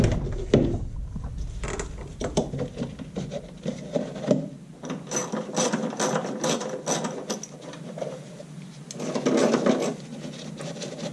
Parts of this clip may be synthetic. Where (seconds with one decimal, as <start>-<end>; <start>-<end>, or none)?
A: none